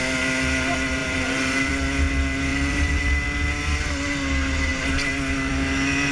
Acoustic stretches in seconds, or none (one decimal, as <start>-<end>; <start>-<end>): 0.0-1.0; 1.7-2.5; 3.0-6.1